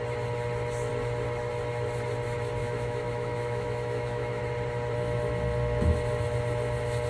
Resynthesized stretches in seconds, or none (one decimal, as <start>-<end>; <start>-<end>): 2.6-4.4